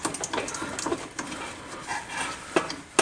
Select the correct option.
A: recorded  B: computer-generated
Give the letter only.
A